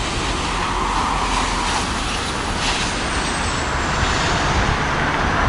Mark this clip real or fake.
real